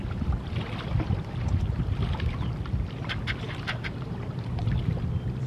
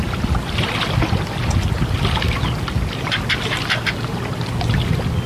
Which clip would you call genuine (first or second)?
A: second